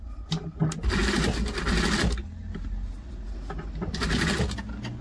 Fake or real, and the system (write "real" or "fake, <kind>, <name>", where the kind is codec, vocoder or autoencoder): real